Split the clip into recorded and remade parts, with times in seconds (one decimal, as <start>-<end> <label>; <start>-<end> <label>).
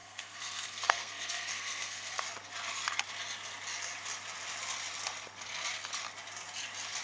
0.0-2.2 remade; 2.2-7.0 recorded